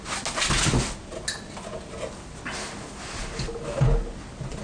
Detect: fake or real real